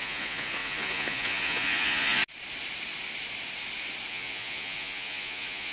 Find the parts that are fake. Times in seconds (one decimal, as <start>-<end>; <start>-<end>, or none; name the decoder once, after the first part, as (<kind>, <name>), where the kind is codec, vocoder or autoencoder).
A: 0.0-2.2 (vocoder, Vocos); 4.1-5.7